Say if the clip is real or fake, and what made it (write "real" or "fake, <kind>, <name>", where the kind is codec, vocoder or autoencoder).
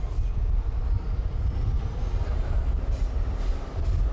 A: real